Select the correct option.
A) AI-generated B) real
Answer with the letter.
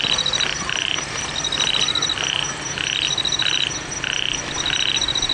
B